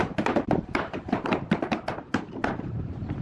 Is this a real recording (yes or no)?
no